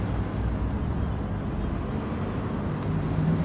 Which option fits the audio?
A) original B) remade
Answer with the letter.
A